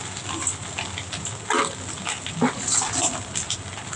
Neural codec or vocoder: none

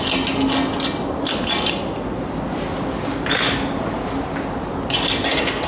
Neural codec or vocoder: none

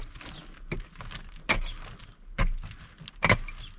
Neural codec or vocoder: none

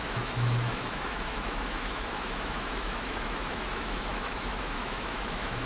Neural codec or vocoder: autoencoder, DAC-VAE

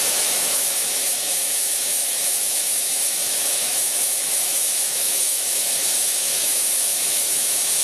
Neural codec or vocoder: autoencoder, DAC-VAE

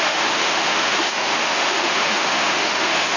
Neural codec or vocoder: autoencoder, DAC-VAE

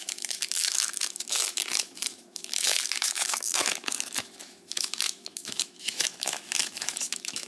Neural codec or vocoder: autoencoder, DAC-VAE